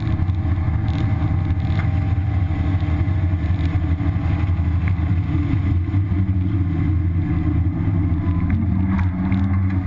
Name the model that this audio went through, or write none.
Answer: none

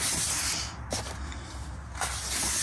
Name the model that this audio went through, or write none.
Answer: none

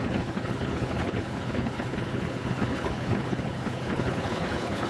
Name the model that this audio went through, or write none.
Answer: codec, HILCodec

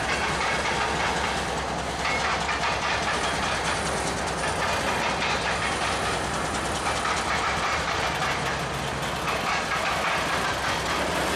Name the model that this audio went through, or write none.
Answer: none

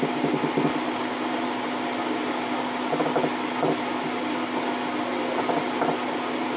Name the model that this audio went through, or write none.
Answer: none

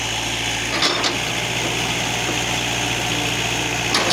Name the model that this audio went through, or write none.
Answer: none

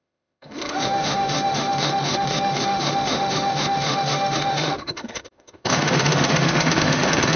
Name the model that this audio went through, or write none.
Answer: autoencoder, DAC-VAE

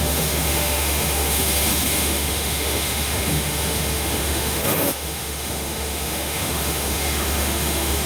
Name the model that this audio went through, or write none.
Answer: autoencoder, DAC-VAE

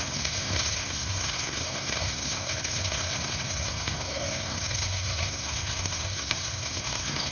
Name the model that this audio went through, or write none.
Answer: codec, SNAC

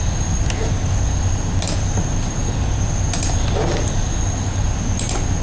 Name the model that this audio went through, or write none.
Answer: none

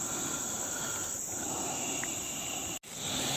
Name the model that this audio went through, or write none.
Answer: none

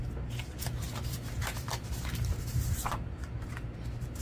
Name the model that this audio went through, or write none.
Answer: vocoder, BigVGAN v2